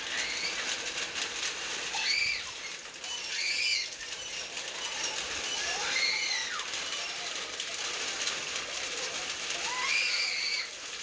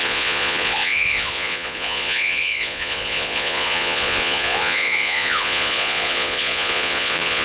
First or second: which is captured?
first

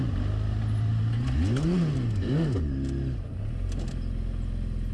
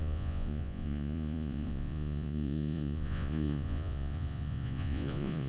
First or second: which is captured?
first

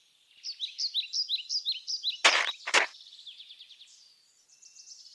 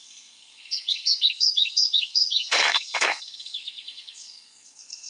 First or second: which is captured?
first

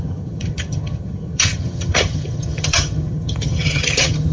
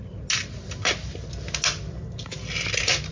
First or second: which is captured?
second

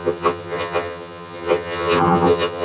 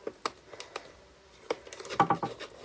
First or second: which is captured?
second